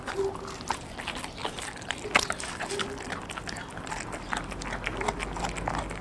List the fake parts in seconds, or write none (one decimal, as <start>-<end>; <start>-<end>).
none